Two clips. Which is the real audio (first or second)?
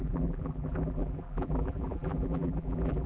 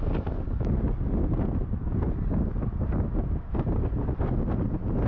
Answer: second